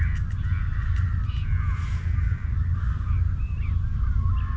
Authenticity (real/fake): real